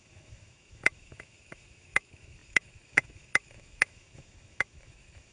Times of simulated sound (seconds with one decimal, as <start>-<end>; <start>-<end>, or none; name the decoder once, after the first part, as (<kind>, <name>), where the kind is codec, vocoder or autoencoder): 0.0-5.3 (autoencoder, DAC-VAE)